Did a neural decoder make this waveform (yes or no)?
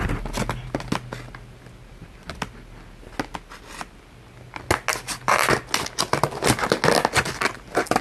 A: no